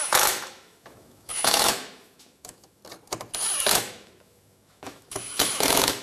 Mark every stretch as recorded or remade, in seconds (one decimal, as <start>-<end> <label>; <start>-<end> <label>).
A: 0.0-2.8 remade; 2.8-3.7 recorded; 3.7-6.0 remade